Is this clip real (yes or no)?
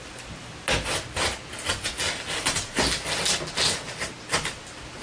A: yes